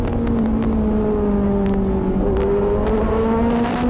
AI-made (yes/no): no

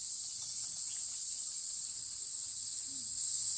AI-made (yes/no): no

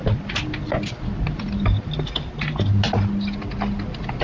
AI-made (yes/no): no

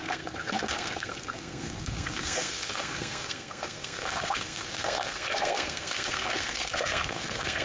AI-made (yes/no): yes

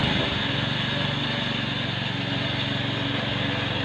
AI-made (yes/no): no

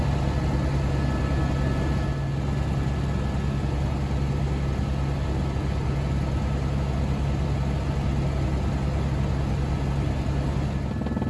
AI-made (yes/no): no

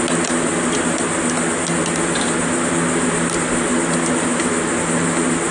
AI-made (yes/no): no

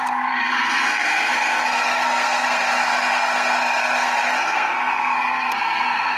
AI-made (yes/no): yes